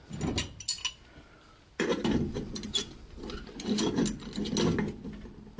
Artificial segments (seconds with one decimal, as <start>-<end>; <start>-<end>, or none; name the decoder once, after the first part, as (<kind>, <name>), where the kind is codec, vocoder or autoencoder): none